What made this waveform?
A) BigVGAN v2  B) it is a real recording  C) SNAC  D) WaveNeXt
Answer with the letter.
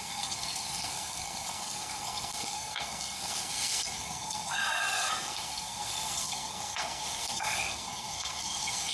C